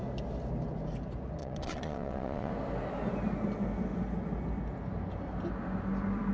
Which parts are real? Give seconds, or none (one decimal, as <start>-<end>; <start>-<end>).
0.0-1.4; 2.5-6.3